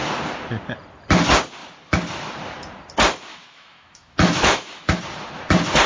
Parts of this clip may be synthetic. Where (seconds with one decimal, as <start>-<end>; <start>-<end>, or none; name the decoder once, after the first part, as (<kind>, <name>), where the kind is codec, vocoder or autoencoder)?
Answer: 3.3-5.0 (autoencoder, DAC-VAE)